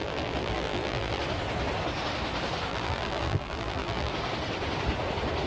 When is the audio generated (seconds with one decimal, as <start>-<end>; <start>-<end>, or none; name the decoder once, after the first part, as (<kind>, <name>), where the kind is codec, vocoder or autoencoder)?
0.0-1.2 (vocoder, BigVGAN v2); 2.7-4.1